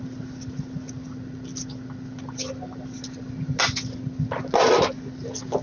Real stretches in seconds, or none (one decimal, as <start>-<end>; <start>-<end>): 0.0-5.6